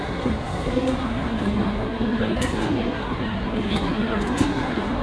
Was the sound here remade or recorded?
remade